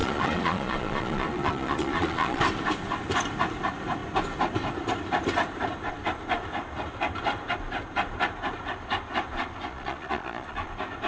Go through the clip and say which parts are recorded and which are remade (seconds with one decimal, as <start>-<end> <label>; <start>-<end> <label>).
0.0-2.4 remade; 2.4-9.7 recorded; 9.7-10.7 remade; 10.7-11.1 recorded